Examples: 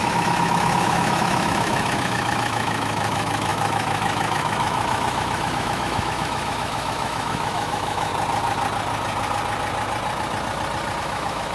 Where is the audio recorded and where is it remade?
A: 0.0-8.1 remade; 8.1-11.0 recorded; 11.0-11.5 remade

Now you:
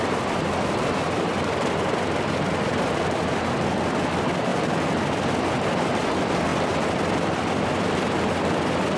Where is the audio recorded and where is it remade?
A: 0.0-9.0 recorded

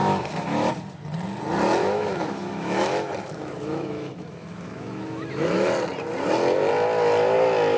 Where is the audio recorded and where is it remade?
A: 0.0-0.7 remade; 0.7-1.8 recorded; 1.8-5.7 remade; 5.7-7.8 recorded

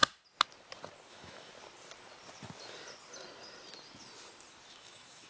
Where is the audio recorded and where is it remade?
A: 0.0-1.1 recorded; 1.1-1.5 remade; 1.5-4.7 recorded; 4.7-5.3 remade

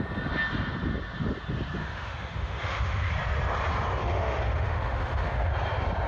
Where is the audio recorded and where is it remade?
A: 0.0-1.8 recorded; 1.8-3.1 remade; 3.1-4.0 recorded; 4.0-5.5 remade; 5.5-6.1 recorded